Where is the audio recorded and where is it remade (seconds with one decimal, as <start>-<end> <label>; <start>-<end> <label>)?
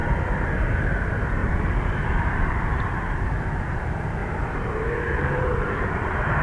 0.0-1.4 recorded; 1.4-2.5 remade; 2.5-4.2 recorded; 4.2-5.8 remade; 5.8-6.4 recorded